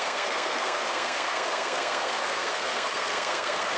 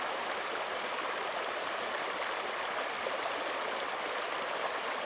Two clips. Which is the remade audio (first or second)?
first